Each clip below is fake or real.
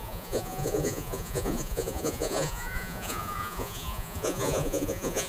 fake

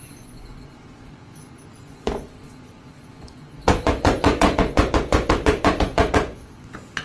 fake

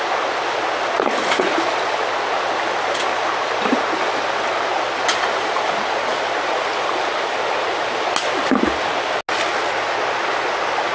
real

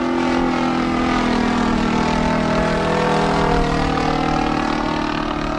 real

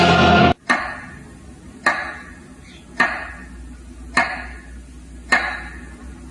real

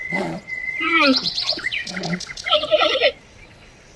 fake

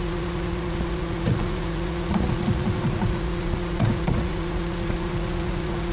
fake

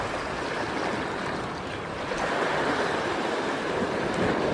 real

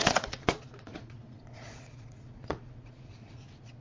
fake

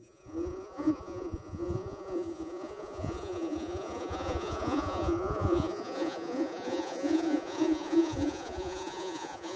fake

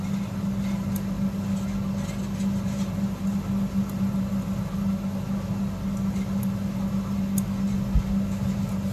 real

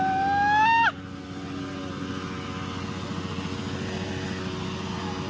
real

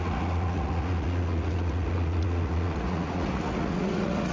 fake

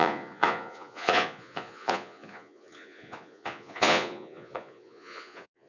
fake